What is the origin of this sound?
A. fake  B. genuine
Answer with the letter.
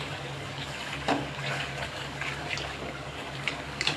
A